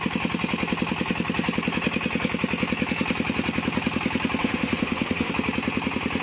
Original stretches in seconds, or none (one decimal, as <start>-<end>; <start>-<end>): 0.0-4.4; 5.3-6.2